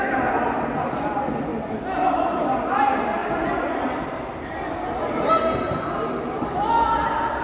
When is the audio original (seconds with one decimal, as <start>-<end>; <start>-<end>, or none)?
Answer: 0.0-7.4